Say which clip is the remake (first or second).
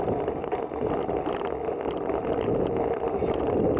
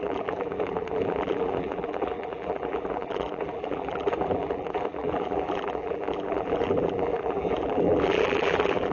second